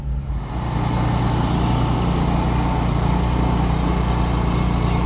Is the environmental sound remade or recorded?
recorded